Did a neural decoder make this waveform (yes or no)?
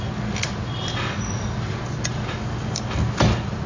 no